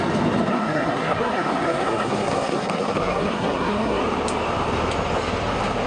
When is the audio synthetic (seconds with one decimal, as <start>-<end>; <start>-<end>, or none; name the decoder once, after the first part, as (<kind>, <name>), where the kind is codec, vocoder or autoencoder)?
0.5-4.0 (codec, SNAC)